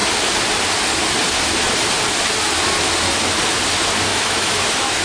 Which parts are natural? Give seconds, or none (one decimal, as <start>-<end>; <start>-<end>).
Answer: 0.0-4.1

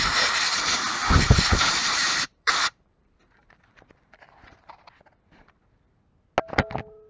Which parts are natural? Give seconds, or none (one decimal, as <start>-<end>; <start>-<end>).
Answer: 0.0-1.0; 4.8-7.1

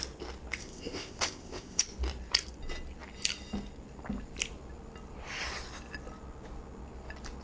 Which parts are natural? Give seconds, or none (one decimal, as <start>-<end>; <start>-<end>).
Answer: 0.0-0.6; 1.8-7.4

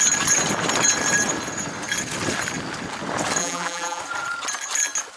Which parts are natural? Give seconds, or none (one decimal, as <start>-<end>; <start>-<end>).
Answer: 0.0-3.4; 4.0-5.2

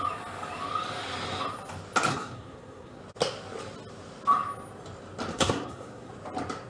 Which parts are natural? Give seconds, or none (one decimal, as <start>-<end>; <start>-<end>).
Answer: 0.0-2.1; 3.0-5.3; 6.1-6.7